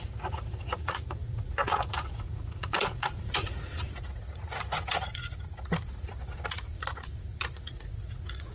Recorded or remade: remade